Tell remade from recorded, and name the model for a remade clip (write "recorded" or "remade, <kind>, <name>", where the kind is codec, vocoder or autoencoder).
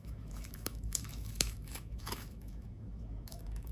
remade, autoencoder, DAC-VAE